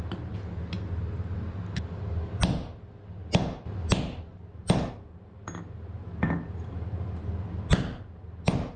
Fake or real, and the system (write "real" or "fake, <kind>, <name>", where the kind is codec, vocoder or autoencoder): real